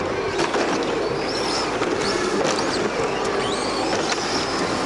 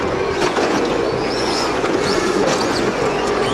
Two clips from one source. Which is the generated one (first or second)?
second